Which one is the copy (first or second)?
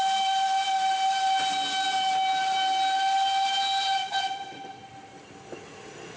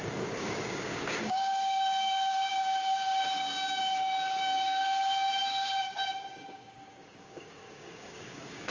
second